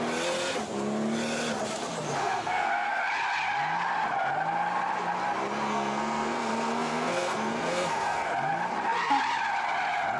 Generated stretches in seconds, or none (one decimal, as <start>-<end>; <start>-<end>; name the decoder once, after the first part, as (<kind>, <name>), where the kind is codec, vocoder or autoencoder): 2.2-3.0 (codec, SNAC); 5.7-8.3